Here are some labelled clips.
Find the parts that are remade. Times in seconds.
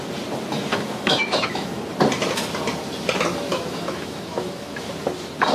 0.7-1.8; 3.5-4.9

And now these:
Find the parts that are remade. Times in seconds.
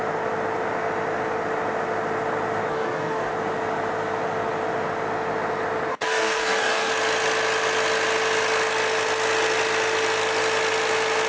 2.7-3.3; 5.9-6.9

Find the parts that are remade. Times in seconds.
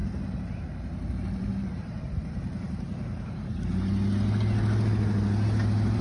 0.0-3.6